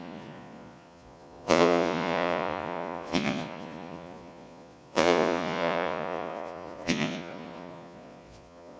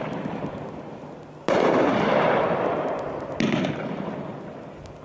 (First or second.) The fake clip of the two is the first